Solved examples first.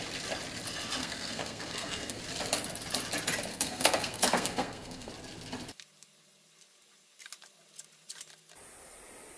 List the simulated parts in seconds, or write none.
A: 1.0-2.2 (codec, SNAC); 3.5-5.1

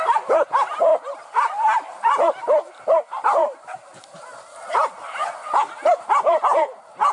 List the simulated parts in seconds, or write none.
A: none

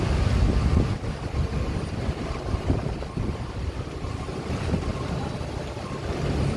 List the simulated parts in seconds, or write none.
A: none

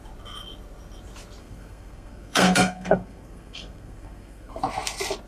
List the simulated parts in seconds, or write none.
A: 1.4-4.6 (codec, SNAC)

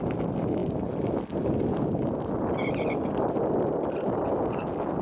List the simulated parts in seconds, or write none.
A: none

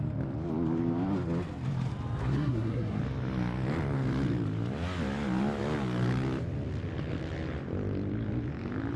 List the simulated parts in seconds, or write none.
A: 2.2-3.0 (codec, SNAC)

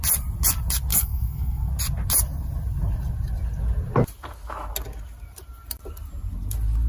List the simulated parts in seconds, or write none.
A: 0.9-1.7 (codec, SNAC)